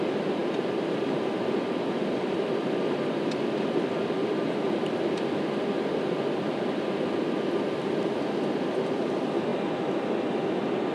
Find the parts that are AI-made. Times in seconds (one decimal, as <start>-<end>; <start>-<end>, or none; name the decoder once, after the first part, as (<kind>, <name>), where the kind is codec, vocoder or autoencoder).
0.4-4.4 (vocoder, BigVGAN v2)